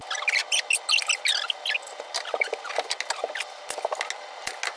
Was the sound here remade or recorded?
recorded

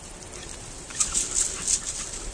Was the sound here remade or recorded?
recorded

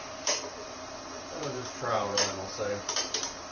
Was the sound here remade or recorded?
remade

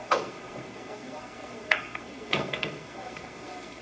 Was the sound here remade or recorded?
remade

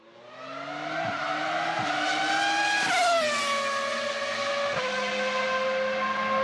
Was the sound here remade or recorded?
recorded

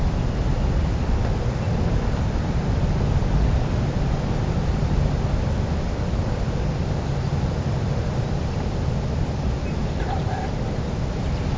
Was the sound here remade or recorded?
recorded